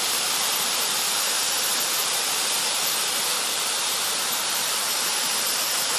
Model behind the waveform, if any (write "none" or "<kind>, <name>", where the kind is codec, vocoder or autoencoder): vocoder, BigVGAN v2